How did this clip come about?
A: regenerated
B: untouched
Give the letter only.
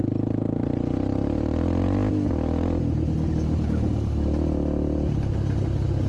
B